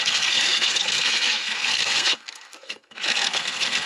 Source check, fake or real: fake